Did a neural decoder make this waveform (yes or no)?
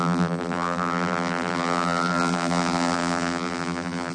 yes